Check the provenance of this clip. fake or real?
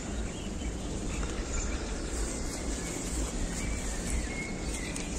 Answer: real